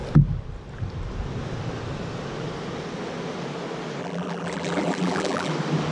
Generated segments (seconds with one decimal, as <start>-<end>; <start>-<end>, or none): 4.0-5.5

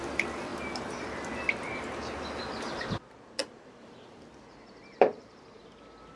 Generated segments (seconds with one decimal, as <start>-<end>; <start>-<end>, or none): 3.4-4.3; 5.1-5.8